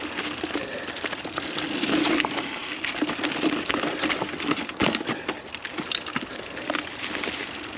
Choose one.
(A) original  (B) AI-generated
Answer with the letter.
A